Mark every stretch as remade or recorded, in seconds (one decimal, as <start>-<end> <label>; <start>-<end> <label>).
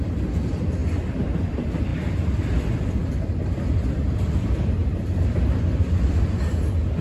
0.0-7.0 remade